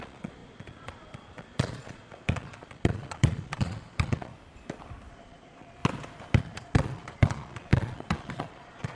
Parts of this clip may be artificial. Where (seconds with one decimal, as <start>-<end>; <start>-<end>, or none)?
0.0-4.3; 5.1-5.8; 6.4-9.0